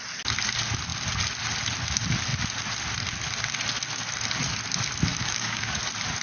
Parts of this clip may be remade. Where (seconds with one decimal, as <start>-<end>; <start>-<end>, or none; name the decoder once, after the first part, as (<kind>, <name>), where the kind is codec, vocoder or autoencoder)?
5.1-5.7 (codec, DAC)